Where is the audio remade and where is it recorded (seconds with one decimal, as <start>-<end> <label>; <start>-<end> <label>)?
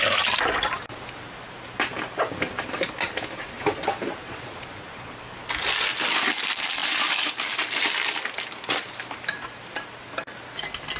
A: 0.0-4.2 recorded; 4.2-5.1 remade; 5.1-11.0 recorded